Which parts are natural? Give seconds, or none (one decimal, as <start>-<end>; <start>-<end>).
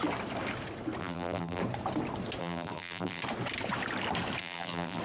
0.0-1.0; 1.6-2.4; 3.2-4.4